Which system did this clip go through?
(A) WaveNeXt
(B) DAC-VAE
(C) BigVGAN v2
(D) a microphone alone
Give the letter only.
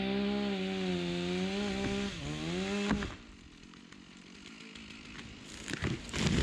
D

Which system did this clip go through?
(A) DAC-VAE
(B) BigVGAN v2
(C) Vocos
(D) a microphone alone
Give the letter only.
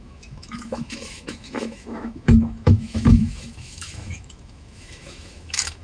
A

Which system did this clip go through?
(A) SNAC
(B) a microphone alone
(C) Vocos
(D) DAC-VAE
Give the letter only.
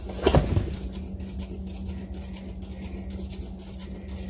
B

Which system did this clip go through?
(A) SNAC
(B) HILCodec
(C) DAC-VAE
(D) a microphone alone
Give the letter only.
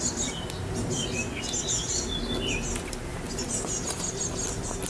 D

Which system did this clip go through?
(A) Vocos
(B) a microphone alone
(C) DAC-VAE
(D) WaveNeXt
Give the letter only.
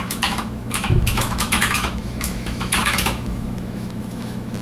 C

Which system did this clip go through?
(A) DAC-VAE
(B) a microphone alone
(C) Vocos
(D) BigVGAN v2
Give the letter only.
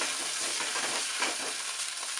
B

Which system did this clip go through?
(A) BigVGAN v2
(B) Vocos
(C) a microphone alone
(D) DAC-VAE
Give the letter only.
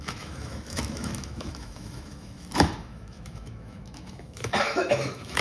D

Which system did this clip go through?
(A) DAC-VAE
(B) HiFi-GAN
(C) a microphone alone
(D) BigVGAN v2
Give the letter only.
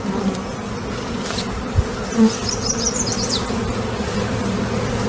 C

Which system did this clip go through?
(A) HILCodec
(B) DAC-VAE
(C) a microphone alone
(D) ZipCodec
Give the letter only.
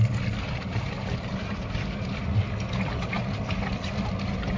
C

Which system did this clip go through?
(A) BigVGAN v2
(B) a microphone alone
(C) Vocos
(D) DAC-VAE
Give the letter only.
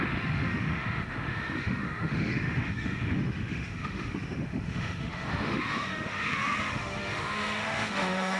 D